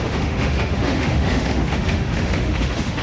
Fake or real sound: fake